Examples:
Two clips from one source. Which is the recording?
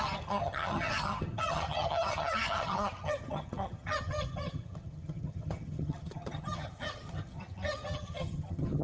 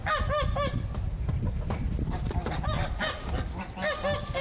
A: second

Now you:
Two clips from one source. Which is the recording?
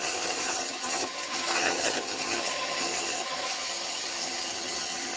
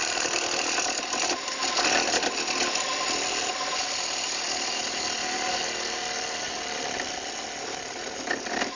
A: second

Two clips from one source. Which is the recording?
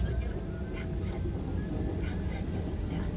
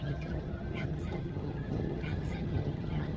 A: first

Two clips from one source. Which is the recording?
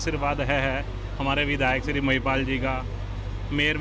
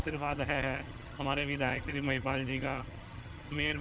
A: first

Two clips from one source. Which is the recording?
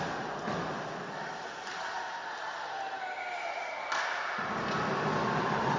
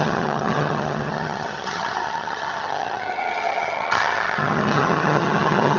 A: first